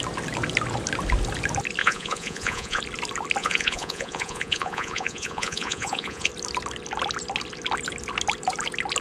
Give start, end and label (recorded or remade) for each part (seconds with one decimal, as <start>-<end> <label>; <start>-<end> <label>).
0.0-1.8 recorded; 1.8-2.8 remade; 2.8-3.4 recorded; 3.4-6.3 remade; 6.3-9.0 recorded